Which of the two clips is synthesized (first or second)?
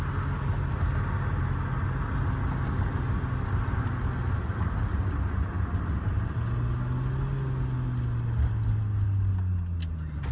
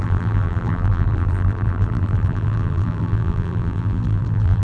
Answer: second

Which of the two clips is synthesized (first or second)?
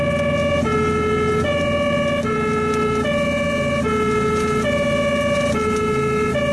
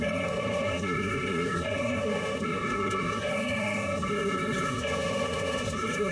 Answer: second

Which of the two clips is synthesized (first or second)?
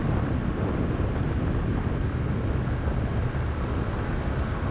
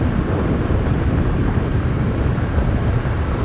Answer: second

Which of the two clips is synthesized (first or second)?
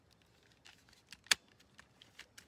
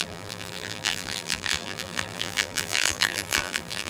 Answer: second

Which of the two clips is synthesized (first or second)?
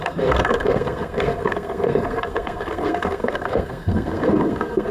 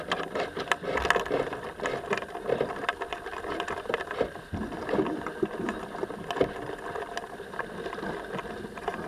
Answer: first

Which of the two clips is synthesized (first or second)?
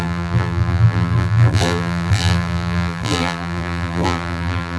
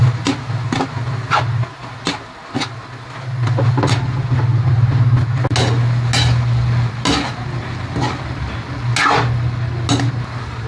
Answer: first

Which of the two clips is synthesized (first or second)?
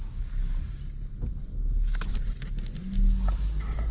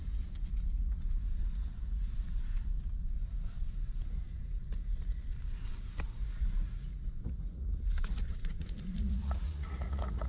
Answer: second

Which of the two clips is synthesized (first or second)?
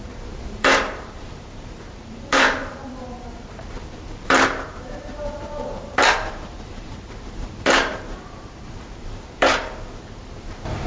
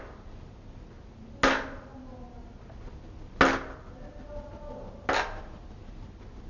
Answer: first